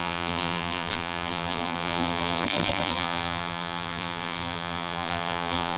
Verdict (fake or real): fake